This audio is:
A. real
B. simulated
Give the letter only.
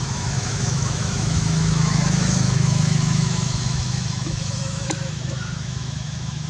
B